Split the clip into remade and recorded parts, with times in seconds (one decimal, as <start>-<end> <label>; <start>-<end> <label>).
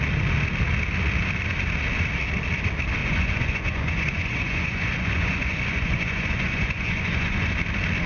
0.0-3.0 recorded; 3.0-7.5 remade; 7.5-8.1 recorded